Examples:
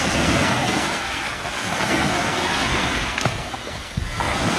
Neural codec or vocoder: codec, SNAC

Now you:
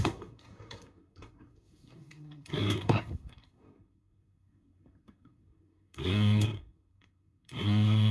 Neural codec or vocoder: codec, SNAC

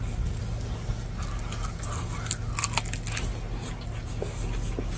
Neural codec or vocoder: none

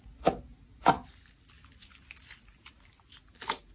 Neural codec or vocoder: none